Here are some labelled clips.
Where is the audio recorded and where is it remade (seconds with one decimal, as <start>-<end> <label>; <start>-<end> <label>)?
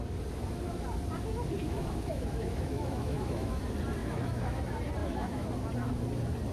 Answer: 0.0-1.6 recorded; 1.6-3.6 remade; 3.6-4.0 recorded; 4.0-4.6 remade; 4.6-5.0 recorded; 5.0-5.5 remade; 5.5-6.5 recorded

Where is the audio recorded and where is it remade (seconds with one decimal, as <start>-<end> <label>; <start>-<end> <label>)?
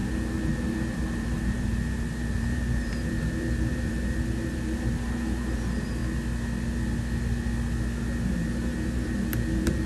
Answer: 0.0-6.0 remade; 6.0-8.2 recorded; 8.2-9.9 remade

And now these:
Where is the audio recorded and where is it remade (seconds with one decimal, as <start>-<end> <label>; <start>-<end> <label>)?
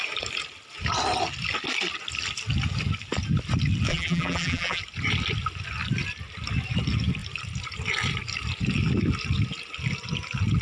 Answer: 0.0-3.9 recorded; 3.9-4.8 remade; 4.8-10.6 recorded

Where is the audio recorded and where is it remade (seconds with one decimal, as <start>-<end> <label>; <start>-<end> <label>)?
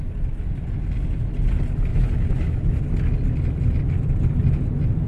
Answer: 0.0-1.9 recorded; 1.9-2.8 remade; 2.8-5.1 recorded